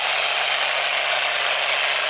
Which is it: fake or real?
real